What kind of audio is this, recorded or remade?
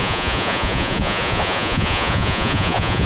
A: remade